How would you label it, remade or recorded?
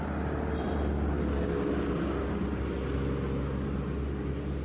recorded